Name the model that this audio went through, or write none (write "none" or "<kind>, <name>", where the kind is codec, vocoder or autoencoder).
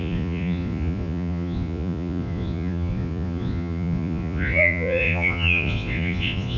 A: vocoder, Vocos